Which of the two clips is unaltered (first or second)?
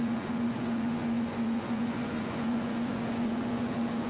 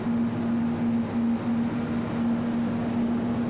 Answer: second